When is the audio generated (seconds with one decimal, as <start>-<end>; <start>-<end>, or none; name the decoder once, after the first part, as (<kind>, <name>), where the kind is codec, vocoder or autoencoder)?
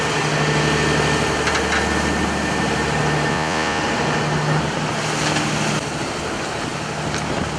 3.3-3.8 (vocoder, Vocos)